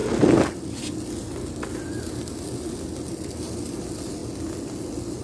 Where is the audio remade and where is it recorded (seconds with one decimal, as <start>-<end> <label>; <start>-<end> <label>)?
0.0-5.2 recorded